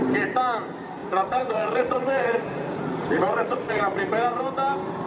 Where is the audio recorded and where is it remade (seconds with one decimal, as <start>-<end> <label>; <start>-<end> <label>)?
0.0-1.0 recorded; 1.0-3.8 remade; 3.8-5.1 recorded